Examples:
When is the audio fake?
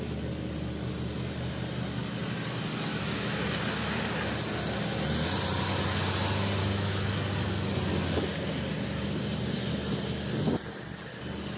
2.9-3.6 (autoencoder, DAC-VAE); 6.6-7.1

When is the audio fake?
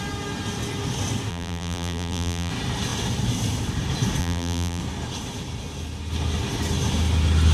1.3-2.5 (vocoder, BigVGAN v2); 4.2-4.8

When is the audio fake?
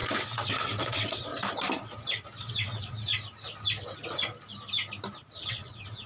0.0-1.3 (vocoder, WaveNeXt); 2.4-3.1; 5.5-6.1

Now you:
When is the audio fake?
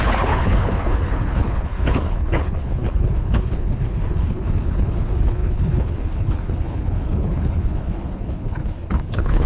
0.0-9.5 (codec, HILCodec)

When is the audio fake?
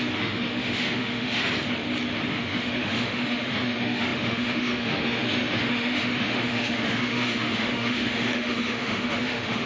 0.0-1.4 (autoencoder, DAC-VAE); 2.2-9.7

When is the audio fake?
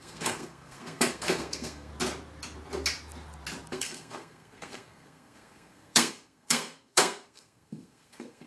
0.0-1.9 (codec, SNAC); 3.7-8.5